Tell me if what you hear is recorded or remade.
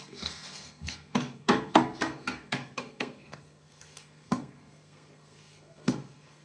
remade